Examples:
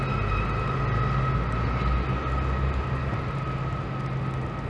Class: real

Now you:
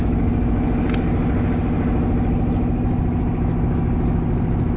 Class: real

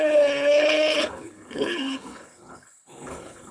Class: fake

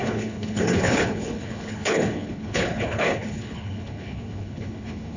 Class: fake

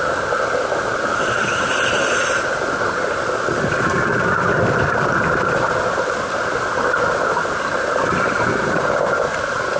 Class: real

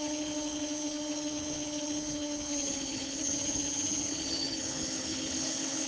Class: fake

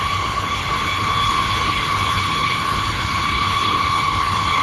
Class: fake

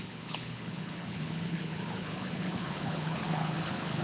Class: fake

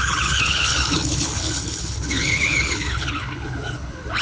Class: fake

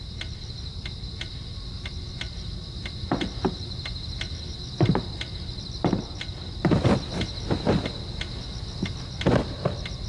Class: real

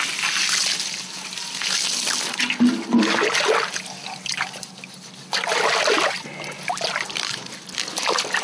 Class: real